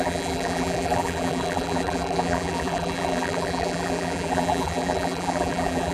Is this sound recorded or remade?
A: remade